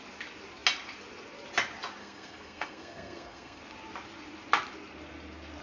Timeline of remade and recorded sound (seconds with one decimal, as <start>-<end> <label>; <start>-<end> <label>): 0.0-2.0 recorded; 2.0-3.6 remade; 3.6-5.6 recorded